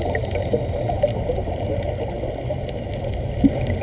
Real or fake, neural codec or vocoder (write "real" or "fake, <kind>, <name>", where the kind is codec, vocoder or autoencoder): real